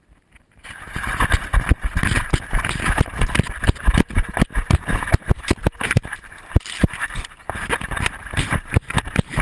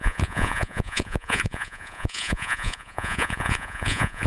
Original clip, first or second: first